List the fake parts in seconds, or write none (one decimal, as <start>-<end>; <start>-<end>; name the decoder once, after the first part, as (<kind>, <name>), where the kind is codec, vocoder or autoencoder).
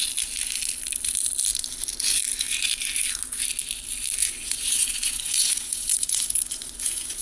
4.2-7.2 (vocoder, Vocos)